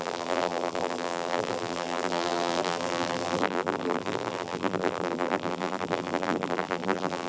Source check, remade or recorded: remade